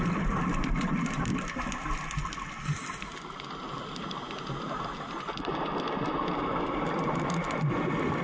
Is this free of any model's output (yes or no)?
yes